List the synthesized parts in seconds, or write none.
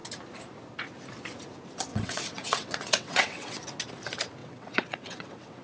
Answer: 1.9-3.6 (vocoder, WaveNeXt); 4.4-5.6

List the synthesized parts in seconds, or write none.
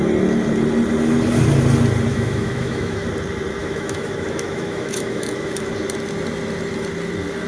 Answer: 2.1-3.1 (autoencoder, DAC-VAE); 3.6-5.7